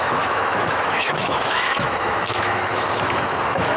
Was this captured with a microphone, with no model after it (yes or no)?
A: no